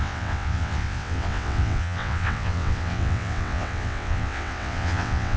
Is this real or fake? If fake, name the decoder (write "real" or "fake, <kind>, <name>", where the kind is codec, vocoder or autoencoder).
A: fake, vocoder, WaveNeXt